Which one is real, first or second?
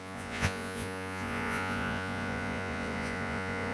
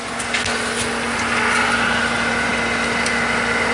second